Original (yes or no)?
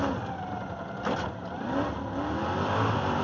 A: yes